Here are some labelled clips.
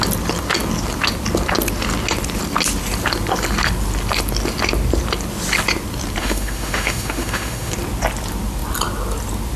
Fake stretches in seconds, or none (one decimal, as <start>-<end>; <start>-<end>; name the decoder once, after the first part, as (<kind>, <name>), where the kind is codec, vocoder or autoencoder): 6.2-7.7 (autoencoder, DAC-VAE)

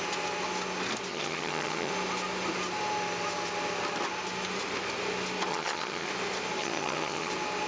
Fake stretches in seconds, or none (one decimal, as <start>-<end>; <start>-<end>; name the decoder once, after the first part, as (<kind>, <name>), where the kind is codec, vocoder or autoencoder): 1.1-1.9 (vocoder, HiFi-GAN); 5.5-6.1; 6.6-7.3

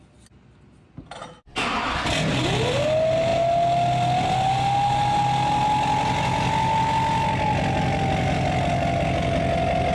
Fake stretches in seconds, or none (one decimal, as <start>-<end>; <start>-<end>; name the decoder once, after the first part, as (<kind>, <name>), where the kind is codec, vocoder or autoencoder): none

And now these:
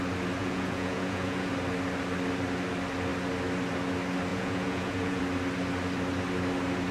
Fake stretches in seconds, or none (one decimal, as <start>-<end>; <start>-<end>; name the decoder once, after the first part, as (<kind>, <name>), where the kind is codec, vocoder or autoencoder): 0.4-1.5 (vocoder, Vocos); 4.3-5.2

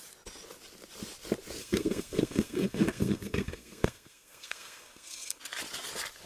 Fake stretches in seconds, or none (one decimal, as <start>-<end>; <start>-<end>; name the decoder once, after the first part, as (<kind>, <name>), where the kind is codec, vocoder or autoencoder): 1.6-5.4 (codec, SNAC)

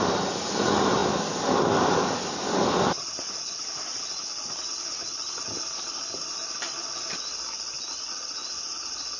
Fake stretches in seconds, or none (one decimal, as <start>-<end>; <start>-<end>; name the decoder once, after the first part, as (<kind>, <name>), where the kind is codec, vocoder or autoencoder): 0.0-3.9 (vocoder, BigVGAN v2); 8.0-9.2

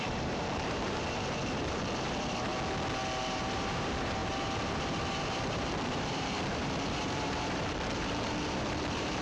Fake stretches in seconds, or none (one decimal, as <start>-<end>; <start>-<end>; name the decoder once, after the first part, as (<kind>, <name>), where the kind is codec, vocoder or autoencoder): 0.0-2.5 (vocoder, BigVGAN v2); 3.2-9.2